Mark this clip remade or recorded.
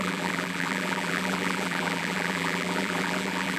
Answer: remade